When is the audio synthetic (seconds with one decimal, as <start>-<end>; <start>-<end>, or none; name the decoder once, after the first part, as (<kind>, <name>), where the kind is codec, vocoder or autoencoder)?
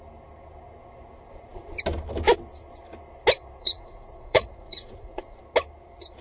3.6-5.4 (vocoder, Vocos)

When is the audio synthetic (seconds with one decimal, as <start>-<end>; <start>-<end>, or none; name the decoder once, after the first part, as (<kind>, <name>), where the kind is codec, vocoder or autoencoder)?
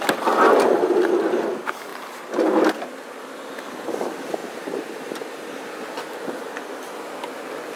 none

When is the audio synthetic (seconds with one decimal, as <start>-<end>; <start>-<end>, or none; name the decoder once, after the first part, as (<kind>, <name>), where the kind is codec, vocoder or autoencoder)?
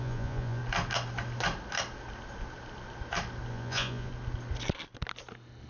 0.0-0.6 (vocoder, Vocos); 3.5-4.1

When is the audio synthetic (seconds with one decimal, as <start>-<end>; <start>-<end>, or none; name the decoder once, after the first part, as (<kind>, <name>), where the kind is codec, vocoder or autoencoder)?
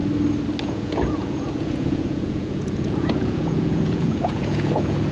0.6-5.1 (vocoder, Vocos)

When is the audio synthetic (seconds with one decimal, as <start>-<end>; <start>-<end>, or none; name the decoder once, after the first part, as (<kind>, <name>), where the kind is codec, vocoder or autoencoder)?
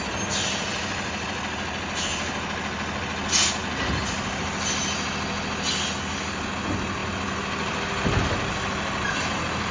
none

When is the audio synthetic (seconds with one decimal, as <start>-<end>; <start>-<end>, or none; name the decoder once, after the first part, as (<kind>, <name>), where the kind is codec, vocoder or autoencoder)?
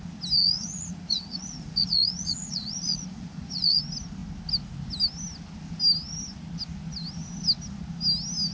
0.4-3.8 (vocoder, Vocos)